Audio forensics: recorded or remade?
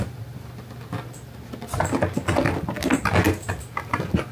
recorded